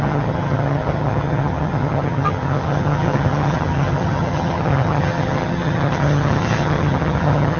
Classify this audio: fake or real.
fake